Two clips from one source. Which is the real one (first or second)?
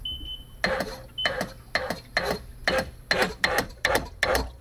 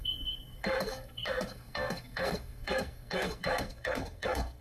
first